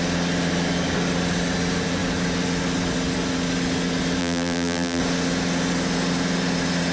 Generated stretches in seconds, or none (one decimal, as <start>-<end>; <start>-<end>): 4.2-5.0